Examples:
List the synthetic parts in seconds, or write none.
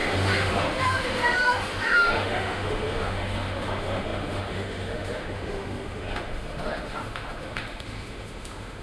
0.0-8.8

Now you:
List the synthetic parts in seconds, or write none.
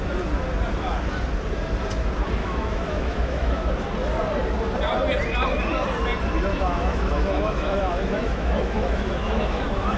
2.4-3.7; 6.5-10.0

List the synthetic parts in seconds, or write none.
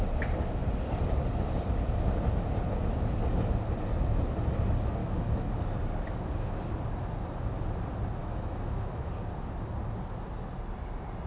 5.0-5.6; 8.2-9.1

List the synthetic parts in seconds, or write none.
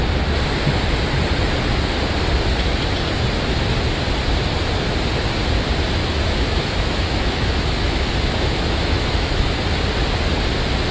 6.0-9.6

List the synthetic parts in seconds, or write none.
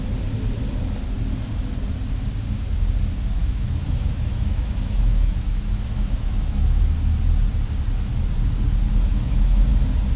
3.4-6.8; 9.1-9.7